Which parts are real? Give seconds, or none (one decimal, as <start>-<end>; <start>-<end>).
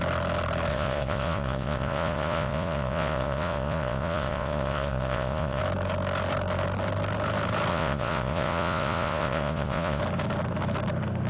0.0-0.7; 5.6-7.7; 10.0-11.3